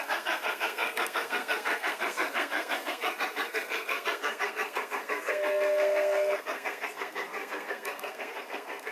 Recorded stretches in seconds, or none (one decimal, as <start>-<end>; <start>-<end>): none